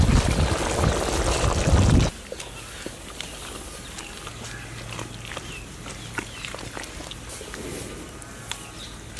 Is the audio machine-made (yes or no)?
no